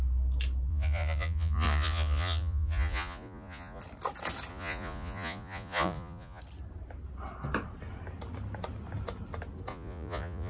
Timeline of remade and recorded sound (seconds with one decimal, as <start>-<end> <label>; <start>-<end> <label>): 0.0-0.7 recorded; 0.7-3.8 remade; 3.8-4.5 recorded; 4.5-6.4 remade; 6.4-9.7 recorded; 9.7-10.5 remade